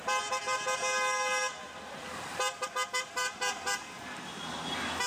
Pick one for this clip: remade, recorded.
recorded